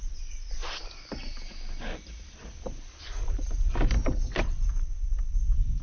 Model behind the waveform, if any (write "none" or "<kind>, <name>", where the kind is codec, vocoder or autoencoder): none